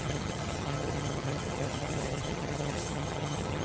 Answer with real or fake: fake